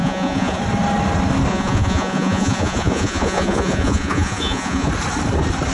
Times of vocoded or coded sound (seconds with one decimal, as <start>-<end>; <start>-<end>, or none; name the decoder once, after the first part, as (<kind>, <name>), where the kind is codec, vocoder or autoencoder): 0.0-0.6 (vocoder, Vocos); 1.5-4.9